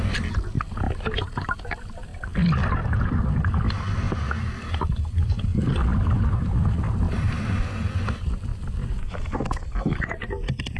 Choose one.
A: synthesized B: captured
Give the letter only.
B